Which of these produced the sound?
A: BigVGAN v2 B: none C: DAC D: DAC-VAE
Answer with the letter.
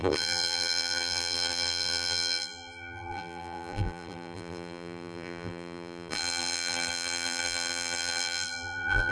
A